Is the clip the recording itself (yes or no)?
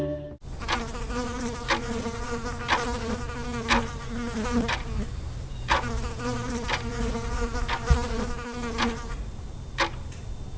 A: yes